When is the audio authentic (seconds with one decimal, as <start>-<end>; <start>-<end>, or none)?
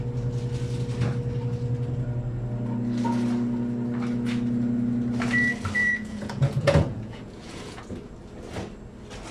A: 0.0-5.8; 7.8-9.3